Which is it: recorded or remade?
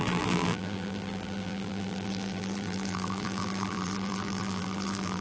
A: remade